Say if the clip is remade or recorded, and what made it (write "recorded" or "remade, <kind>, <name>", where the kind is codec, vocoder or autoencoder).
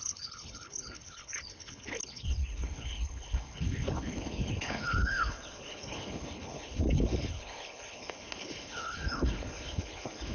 remade, codec, HILCodec